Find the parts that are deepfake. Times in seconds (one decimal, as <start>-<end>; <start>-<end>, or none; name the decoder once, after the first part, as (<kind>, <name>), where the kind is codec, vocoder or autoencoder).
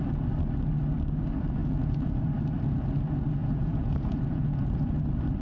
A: 1.6-2.2 (vocoder, Vocos); 3.4-5.0